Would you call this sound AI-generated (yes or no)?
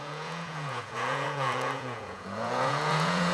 yes